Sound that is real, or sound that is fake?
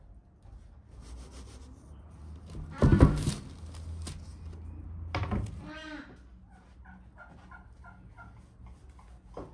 real